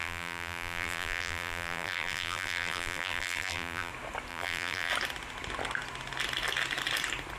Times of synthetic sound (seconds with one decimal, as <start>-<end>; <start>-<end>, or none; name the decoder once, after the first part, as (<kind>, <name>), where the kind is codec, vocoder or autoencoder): 0.0-3.9 (vocoder, BigVGAN v2); 4.3-4.9